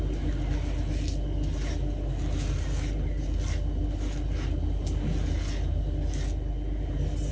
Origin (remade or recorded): recorded